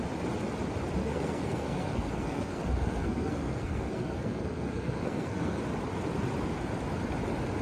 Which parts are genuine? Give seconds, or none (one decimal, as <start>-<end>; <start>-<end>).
0.0-1.0; 5.6-7.6